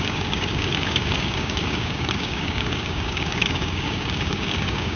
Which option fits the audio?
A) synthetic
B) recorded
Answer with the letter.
A